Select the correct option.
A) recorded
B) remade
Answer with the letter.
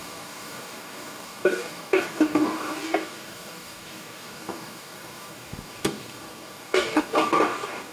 B